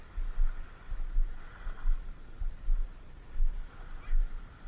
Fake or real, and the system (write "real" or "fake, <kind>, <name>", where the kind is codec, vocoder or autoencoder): real